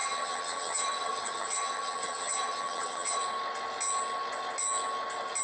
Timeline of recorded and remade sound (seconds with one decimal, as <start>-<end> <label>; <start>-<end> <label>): 0.0-3.2 remade; 3.2-5.4 recorded